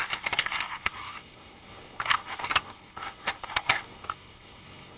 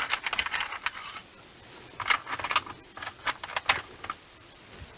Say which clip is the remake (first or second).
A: first